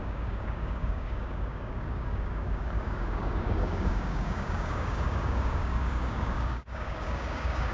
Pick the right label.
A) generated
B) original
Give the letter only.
A